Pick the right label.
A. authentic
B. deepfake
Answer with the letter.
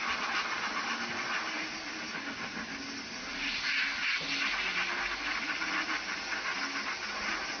A